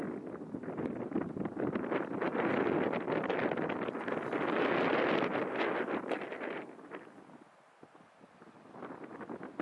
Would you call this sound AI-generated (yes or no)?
no